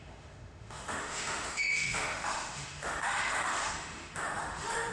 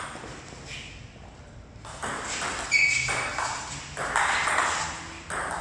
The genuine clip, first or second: second